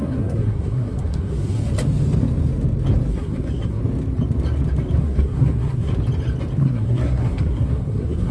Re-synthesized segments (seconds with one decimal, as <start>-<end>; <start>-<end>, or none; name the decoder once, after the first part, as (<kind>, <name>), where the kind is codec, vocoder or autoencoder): 0.0-1.7 (codec, SNAC); 3.1-3.8; 5.0-5.9; 6.6-8.3